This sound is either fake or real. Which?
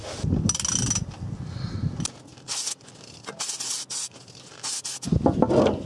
real